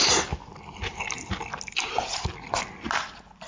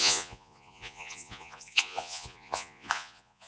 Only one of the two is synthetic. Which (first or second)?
second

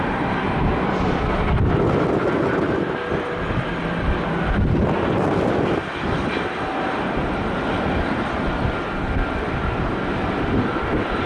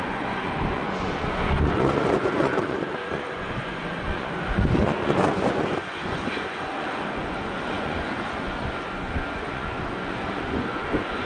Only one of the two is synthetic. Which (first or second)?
second